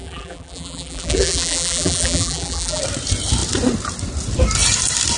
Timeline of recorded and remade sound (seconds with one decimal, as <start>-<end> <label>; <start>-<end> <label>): 0.0-2.8 remade; 2.8-5.2 recorded